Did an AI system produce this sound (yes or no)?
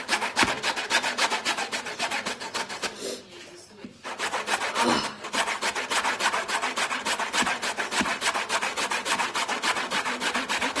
no